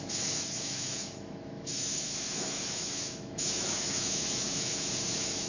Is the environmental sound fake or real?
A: fake